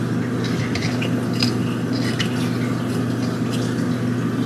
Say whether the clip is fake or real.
real